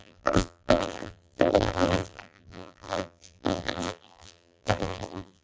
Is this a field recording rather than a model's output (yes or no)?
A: no